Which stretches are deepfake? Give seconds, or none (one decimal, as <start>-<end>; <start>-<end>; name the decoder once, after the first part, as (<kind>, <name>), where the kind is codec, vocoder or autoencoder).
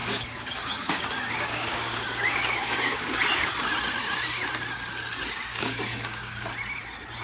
0.0-3.5 (codec, DAC); 5.5-6.5